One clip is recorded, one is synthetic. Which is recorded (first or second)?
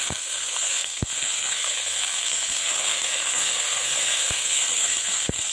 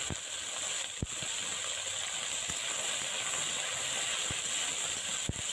second